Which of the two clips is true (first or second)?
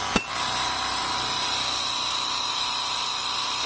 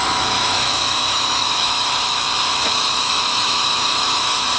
first